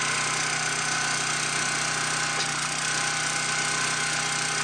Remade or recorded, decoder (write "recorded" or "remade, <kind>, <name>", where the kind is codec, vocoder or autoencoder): recorded